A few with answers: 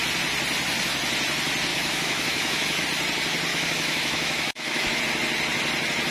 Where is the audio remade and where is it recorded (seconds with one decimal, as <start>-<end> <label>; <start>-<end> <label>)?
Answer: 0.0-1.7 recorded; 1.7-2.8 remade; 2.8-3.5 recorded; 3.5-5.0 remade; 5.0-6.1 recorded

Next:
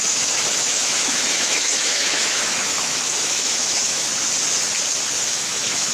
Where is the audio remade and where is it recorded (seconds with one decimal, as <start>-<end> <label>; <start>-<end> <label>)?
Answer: 0.0-4.1 remade; 4.1-5.3 recorded; 5.3-5.9 remade

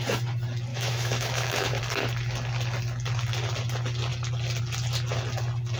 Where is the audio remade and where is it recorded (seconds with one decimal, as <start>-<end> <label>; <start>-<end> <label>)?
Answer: 0.0-0.7 recorded; 0.7-1.8 remade; 1.8-5.8 recorded

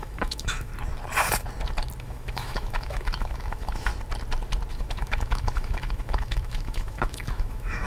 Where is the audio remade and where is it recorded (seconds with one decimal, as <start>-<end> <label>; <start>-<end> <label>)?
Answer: 0.0-0.7 remade; 0.7-2.0 recorded; 2.0-3.9 remade; 3.9-4.7 recorded; 4.7-7.9 remade